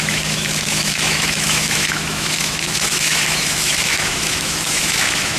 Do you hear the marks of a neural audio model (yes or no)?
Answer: yes